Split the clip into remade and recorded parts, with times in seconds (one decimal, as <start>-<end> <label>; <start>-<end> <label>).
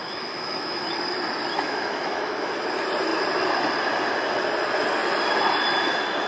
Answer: 0.0-0.9 remade; 0.9-1.5 recorded; 1.5-2.5 remade; 2.5-6.3 recorded